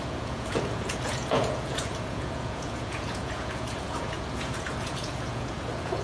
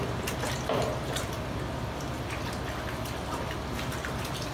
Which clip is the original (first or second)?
second